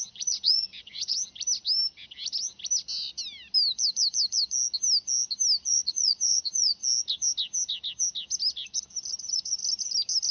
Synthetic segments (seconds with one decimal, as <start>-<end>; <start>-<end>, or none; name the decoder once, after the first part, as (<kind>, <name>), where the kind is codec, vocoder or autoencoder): 0.0-1.2 (vocoder, Vocos); 5.7-6.8; 9.2-9.6